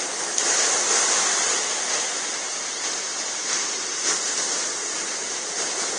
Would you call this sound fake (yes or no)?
no